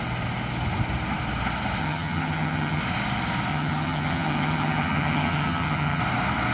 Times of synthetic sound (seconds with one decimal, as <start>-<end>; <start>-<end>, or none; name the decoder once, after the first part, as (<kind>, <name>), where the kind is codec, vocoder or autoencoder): 1.8-2.8 (vocoder, HiFi-GAN); 3.5-6.0